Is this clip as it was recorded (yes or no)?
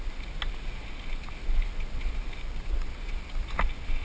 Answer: yes